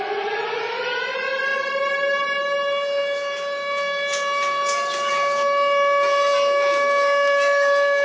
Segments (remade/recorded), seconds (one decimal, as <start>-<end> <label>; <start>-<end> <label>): 0.0-8.0 recorded